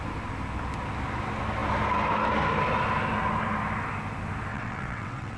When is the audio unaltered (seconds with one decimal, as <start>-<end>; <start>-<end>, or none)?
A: 0.0-4.5